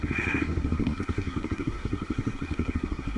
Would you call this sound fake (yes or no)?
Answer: yes